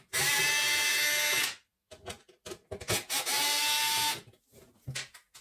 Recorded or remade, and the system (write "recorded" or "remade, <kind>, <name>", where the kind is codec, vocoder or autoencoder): recorded